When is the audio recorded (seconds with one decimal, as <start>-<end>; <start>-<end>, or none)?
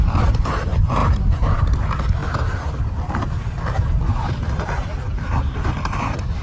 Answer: 0.0-6.4